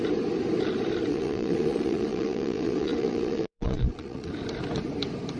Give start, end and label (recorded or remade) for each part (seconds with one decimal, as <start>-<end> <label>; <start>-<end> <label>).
0.0-1.1 recorded; 1.1-4.3 remade; 4.3-5.4 recorded